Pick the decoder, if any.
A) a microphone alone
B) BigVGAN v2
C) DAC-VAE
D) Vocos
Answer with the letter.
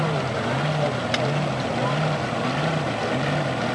A